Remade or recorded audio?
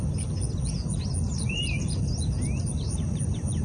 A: recorded